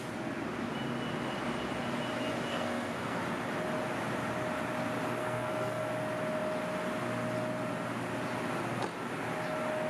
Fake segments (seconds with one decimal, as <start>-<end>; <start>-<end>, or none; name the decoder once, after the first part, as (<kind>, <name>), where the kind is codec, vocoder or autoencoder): 2.5-3.2 (codec, SNAC); 5.2-5.8

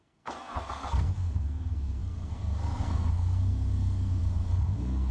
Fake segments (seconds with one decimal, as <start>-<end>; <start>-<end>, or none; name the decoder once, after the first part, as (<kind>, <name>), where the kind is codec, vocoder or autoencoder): 0.0-5.1 (codec, SNAC)

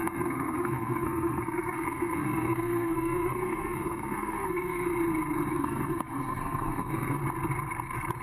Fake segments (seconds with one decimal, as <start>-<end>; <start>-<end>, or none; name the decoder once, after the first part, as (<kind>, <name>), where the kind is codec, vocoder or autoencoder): 0.0-4.9 (codec, SNAC); 5.5-7.2

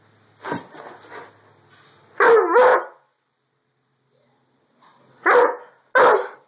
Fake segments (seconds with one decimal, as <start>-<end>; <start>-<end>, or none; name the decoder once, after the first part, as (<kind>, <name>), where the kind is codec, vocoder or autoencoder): none

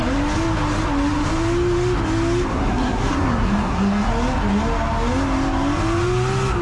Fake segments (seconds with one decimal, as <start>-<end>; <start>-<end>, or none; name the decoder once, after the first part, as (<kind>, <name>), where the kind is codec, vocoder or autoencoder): 2.5-4.1 (codec, SNAC)

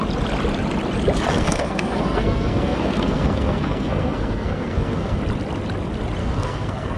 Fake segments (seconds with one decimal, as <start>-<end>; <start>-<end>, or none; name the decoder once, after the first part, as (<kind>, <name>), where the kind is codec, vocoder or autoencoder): 1.3-5.2 (codec, SNAC); 6.2-7.0

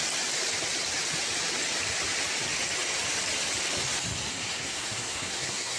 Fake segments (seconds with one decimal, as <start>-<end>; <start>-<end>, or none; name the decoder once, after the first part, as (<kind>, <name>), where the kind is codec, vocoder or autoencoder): 4.3-5.8 (codec, SNAC)

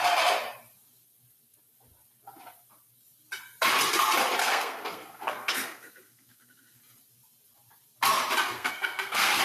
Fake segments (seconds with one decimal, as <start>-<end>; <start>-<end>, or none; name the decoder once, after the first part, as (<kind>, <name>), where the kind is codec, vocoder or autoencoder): 4.4-6.8 (codec, SNAC); 8.4-9.4